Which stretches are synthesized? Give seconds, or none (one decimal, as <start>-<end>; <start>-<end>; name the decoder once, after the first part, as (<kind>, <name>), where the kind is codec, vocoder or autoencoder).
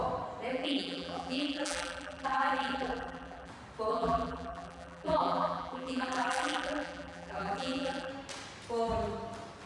0.5-3.5 (vocoder, BigVGAN v2); 3.9-8.1